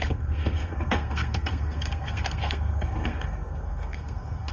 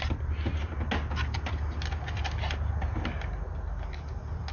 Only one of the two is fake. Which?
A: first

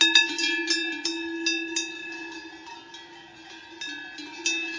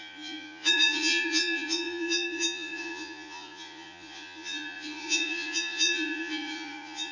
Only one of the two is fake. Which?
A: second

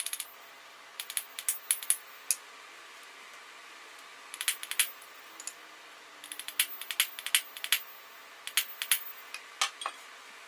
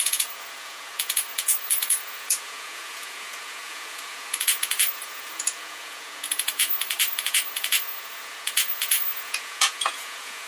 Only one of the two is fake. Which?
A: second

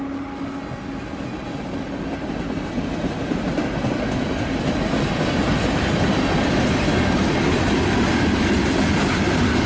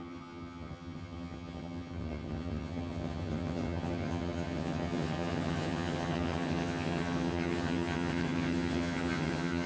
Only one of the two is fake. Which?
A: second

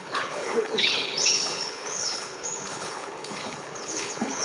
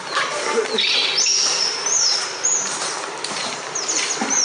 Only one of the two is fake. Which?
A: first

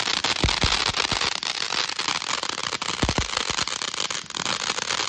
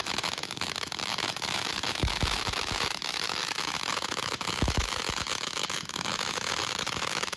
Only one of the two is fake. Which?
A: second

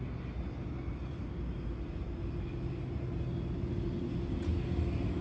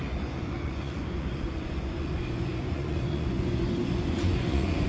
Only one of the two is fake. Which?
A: second